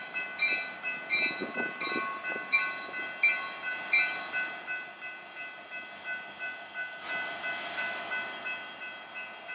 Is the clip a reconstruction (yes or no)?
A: no